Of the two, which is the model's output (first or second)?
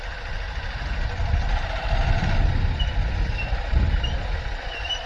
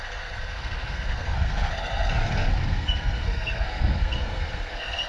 second